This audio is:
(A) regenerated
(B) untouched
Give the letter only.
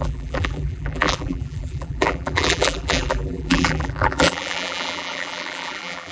A